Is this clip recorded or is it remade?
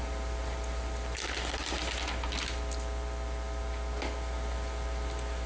recorded